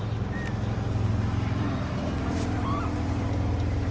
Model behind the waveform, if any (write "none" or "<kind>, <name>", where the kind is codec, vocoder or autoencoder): none